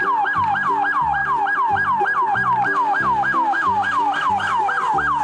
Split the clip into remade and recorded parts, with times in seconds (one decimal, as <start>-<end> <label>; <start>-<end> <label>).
0.0-5.2 recorded